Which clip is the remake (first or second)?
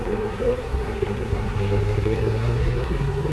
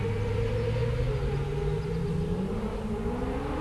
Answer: first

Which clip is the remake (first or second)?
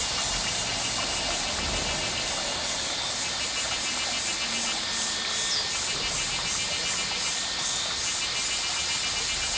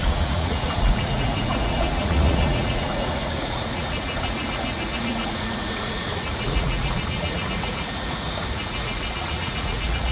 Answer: second